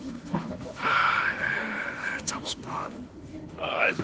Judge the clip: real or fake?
fake